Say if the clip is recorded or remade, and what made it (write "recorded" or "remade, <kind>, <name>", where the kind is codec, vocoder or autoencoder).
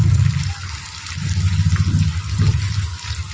recorded